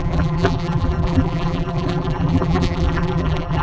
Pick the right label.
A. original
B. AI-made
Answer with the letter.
B